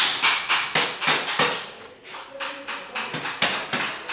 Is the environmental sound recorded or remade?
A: recorded